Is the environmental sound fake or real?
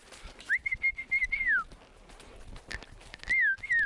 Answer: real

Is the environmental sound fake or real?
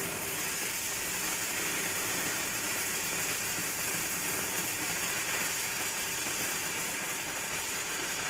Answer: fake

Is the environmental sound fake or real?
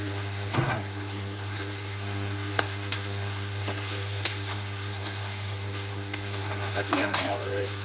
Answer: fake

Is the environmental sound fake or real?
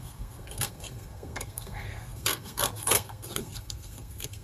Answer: fake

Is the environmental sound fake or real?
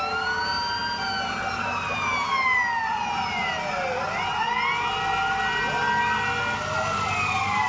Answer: real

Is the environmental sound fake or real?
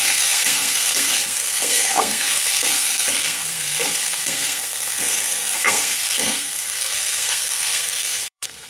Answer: fake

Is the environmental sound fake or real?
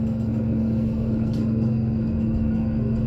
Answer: fake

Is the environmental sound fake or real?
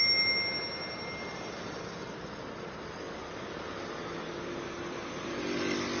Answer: real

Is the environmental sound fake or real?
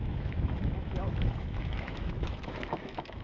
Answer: fake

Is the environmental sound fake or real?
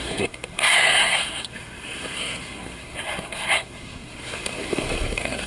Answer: fake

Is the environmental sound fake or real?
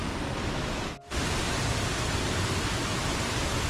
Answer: real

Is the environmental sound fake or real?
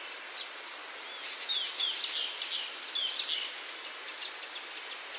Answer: real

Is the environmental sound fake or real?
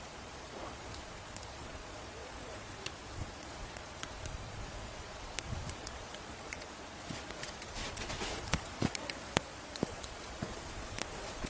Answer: fake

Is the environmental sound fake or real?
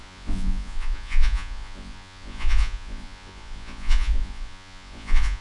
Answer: fake